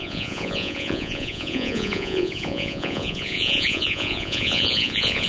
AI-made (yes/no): yes